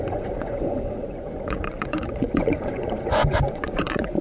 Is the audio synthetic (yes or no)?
yes